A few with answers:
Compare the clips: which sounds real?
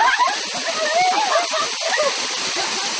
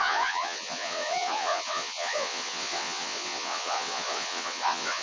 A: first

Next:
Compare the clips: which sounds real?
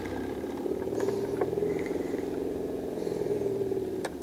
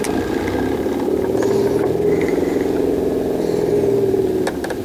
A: second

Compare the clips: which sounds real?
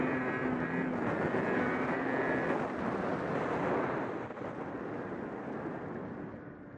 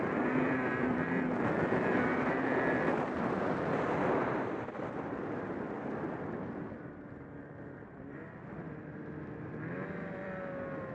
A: first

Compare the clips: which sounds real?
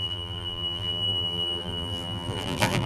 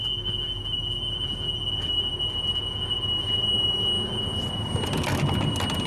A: second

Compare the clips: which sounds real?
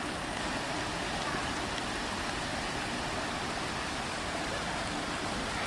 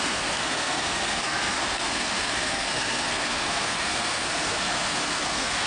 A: first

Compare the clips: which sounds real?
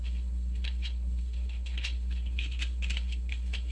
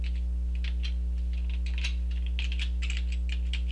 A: second